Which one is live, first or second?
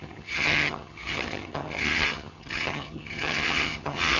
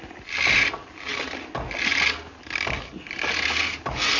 second